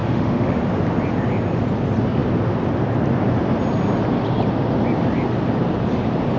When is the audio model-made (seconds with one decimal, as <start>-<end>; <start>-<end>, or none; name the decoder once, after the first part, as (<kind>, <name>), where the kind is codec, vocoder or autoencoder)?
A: 0.0-0.6 (autoencoder, DAC-VAE)